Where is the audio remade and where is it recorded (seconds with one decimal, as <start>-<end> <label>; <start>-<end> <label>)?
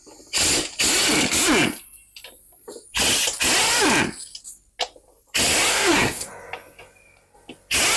0.0-5.7 recorded; 5.7-6.3 remade; 6.3-8.0 recorded